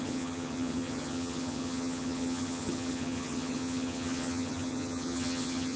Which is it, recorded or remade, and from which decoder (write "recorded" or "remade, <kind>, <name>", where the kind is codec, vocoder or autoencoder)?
remade, vocoder, HiFi-GAN